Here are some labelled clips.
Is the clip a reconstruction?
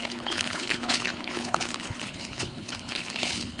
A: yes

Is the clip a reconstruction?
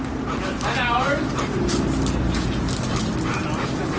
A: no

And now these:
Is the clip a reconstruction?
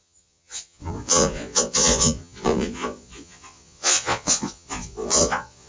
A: yes